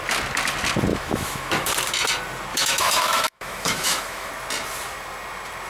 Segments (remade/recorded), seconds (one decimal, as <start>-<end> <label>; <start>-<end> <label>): 0.0-0.9 recorded; 0.9-1.7 remade; 1.7-2.5 recorded; 2.5-4.3 remade; 4.3-5.7 recorded